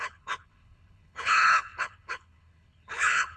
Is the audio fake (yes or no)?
yes